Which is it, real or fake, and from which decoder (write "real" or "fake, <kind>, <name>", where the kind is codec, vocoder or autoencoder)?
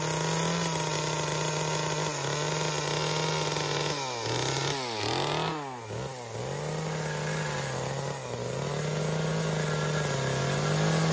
real